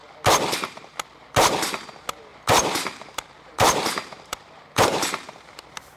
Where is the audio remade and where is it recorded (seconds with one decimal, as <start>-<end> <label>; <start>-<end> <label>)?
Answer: 0.0-2.3 recorded; 2.3-5.0 remade; 5.0-6.0 recorded